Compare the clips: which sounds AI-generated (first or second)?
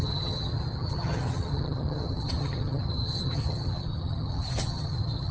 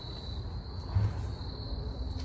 first